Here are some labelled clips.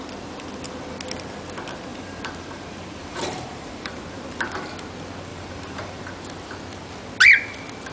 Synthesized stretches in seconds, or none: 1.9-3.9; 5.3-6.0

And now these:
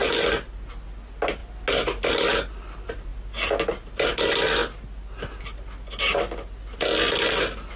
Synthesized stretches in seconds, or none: none

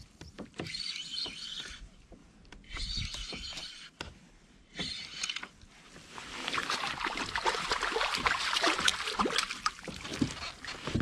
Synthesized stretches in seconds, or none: 0.0-2.2; 2.7-5.2; 6.1-8.9; 9.6-10.1

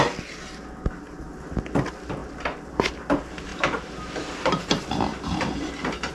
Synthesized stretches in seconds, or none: 3.5-6.1

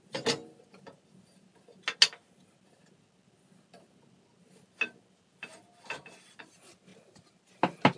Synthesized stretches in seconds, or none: none